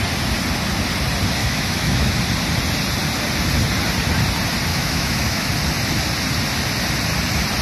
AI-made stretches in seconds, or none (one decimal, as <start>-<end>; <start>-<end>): 1.4-2.2; 4.7-5.5